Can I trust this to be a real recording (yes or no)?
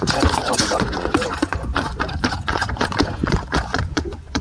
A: no